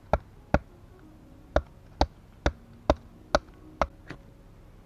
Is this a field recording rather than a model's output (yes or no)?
yes